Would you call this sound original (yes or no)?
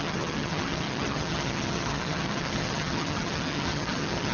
no